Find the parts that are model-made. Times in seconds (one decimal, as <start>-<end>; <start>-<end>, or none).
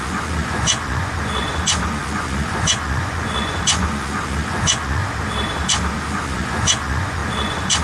0.0-5.0; 6.1-7.8